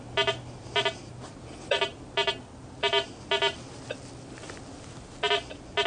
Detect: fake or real real